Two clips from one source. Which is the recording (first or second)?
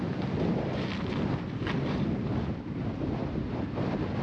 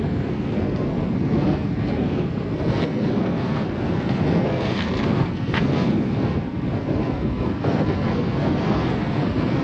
first